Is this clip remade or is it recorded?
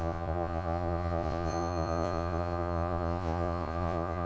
remade